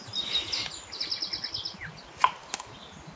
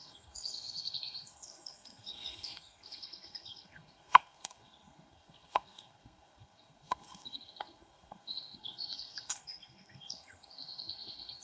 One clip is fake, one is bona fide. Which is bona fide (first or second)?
first